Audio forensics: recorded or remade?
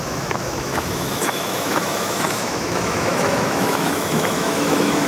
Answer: remade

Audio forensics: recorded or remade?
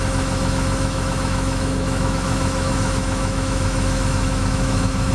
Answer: remade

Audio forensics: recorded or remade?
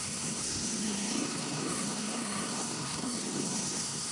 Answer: remade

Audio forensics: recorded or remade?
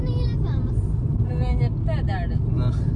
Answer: recorded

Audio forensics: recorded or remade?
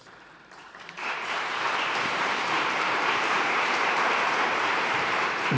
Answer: remade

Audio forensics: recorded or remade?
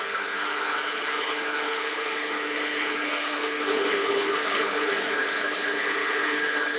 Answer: remade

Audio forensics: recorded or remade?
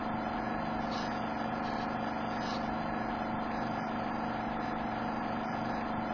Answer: recorded